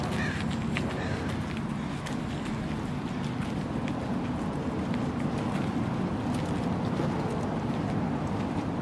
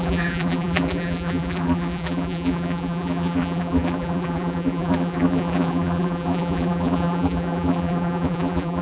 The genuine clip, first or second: first